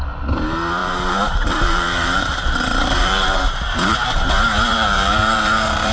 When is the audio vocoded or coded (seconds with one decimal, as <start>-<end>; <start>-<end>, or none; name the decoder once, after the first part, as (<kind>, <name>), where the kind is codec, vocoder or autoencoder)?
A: 0.8-4.3 (vocoder, BigVGAN v2); 4.7-5.9